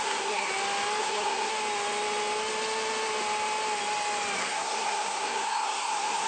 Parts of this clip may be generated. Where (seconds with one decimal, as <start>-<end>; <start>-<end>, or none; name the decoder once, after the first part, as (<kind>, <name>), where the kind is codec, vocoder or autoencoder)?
0.0-0.5 (codec, SNAC); 1.0-1.5; 4.4-6.3